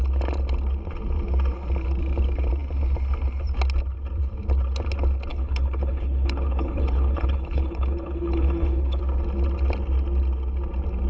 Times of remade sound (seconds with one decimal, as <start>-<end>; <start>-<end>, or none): 5.3-9.0